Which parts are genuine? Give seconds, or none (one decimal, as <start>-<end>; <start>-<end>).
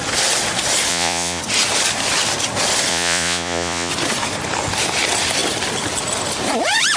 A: 0.0-0.9; 1.4-2.9; 3.9-7.0